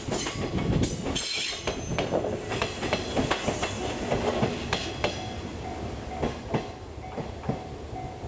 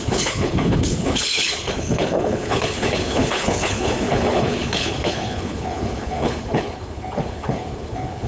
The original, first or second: first